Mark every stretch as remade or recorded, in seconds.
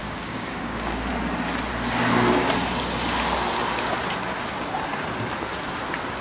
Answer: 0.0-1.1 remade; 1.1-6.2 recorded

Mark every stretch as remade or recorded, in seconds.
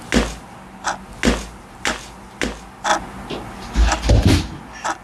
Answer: 0.0-5.0 recorded